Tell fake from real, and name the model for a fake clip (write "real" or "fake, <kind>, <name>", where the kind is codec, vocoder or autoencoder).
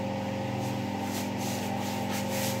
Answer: real